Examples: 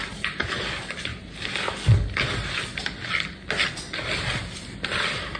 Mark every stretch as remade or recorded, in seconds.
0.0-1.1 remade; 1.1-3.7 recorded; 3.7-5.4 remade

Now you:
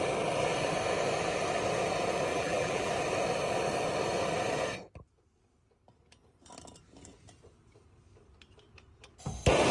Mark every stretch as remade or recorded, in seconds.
0.0-2.3 recorded; 2.3-2.9 remade; 2.9-9.7 recorded

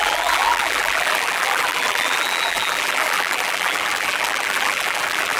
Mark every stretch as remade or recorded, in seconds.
0.0-5.4 remade

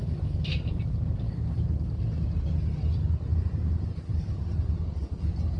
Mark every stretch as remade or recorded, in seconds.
0.0-5.6 recorded

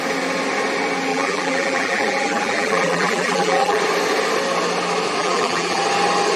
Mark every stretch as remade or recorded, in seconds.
0.0-1.1 recorded; 1.1-3.8 remade; 3.8-5.2 recorded; 5.2-5.8 remade; 5.8-6.4 recorded

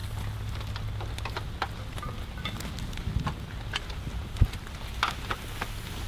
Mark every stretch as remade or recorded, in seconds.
0.0-6.1 recorded

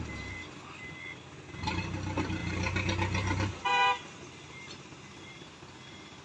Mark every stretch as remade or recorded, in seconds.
0.0-2.4 recorded; 2.4-5.6 remade; 5.6-6.2 recorded